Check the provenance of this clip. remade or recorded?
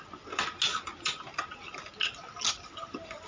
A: recorded